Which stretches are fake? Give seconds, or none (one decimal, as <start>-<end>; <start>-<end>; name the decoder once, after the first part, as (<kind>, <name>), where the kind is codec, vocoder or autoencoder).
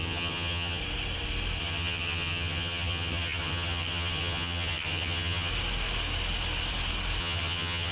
0.0-0.8 (vocoder, HiFi-GAN); 1.6-5.5; 7.2-7.9